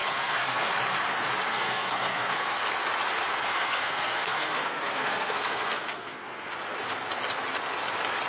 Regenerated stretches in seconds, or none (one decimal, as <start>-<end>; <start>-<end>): 0.0-0.7; 1.5-2.6; 3.3-6.5